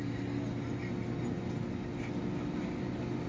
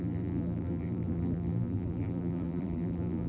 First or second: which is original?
first